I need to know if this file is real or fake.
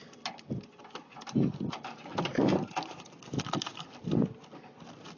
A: real